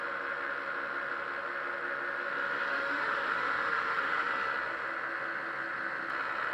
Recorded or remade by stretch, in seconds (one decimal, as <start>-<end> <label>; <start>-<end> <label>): 0.0-2.7 recorded; 2.7-4.3 remade; 4.3-6.5 recorded